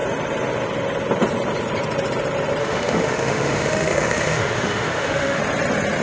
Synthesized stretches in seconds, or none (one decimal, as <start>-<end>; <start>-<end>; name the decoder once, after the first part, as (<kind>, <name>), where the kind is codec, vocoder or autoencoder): 2.6-5.4 (autoencoder, DAC-VAE)